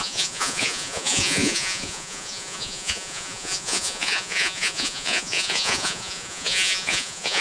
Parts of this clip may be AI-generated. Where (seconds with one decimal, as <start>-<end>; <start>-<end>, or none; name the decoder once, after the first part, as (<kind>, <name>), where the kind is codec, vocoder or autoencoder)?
0.0-7.4 (vocoder, Vocos)